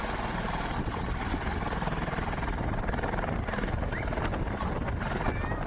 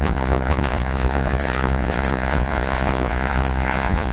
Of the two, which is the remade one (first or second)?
second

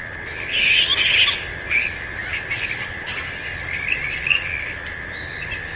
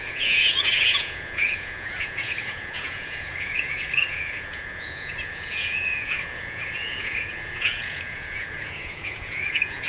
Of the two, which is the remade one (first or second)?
second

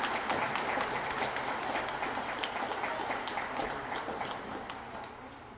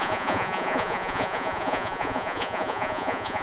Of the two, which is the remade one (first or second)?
second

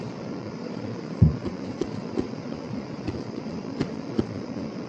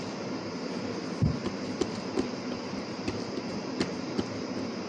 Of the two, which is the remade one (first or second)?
first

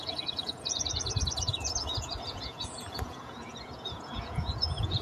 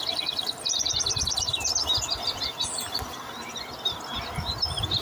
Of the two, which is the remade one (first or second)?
first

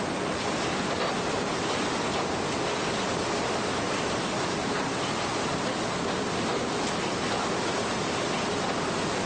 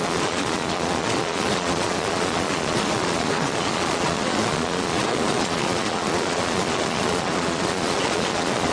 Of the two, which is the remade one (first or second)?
second